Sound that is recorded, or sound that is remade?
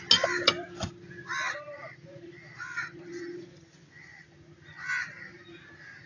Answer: recorded